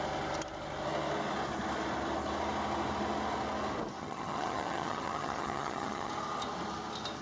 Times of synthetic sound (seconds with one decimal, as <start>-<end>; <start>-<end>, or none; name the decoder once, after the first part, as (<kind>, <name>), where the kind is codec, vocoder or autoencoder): 4.0-6.1 (vocoder, HiFi-GAN)